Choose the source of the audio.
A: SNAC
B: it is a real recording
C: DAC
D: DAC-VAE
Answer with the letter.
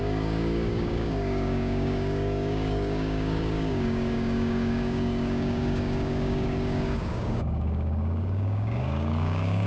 C